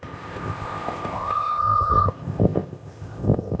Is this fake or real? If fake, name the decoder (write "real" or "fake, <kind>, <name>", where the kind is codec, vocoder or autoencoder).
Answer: fake, codec, ZipCodec